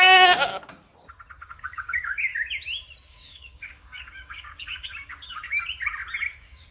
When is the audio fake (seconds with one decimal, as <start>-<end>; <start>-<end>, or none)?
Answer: 0.0-0.5; 1.5-2.3; 3.1-5.4; 6.3-6.7